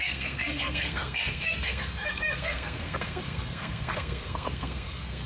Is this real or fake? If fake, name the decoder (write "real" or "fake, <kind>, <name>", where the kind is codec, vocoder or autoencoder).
fake, codec, SNAC